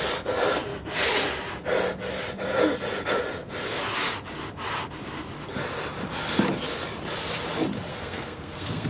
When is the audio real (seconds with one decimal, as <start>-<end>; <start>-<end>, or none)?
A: 0.0-7.9